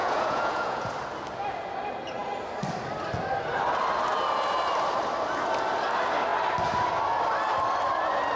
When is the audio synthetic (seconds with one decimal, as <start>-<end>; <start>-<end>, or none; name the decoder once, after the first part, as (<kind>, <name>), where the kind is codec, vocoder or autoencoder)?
0.0-0.9 (vocoder, Vocos)

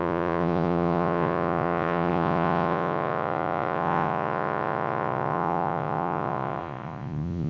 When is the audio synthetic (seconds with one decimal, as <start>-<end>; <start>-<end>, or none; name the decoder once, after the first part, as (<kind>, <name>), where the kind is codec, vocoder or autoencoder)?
0.0-7.5 (vocoder, Vocos)